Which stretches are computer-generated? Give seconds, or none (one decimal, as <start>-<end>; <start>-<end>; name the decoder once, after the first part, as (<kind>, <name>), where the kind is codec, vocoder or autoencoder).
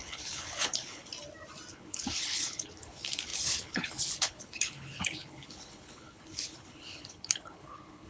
0.0-1.1 (codec, HILCodec); 1.7-8.1